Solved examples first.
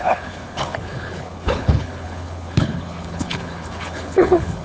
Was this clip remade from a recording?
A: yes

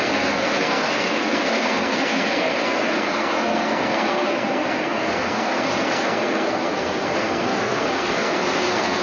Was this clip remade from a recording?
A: yes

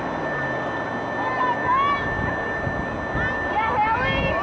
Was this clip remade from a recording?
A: no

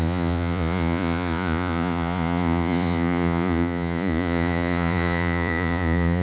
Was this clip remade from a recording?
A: yes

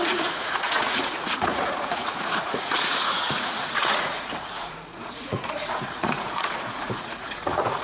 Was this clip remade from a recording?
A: yes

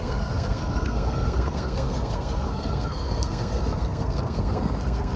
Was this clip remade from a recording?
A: yes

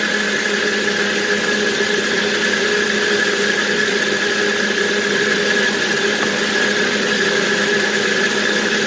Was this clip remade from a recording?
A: no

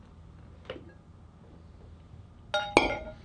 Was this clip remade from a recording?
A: no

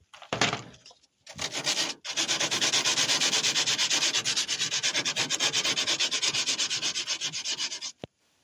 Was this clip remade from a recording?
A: no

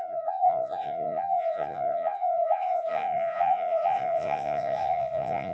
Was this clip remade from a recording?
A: yes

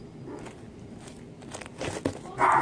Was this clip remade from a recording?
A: no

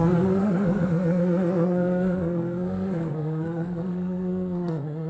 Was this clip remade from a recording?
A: yes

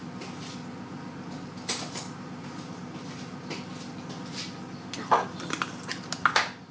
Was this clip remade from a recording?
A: no